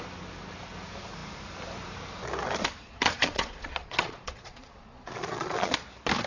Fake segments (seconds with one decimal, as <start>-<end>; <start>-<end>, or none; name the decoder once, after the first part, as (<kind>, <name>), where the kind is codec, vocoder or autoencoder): 2.8-5.7 (vocoder, Vocos)